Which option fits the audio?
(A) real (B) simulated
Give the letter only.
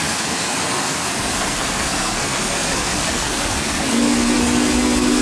B